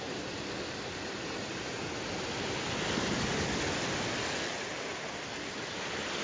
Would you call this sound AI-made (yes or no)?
no